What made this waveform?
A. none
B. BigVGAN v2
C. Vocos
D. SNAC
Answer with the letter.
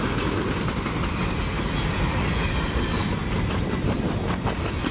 A